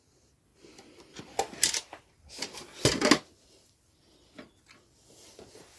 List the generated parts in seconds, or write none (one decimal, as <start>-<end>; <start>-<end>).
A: none